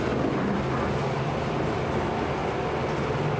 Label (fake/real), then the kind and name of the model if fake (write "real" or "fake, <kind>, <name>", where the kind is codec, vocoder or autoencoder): real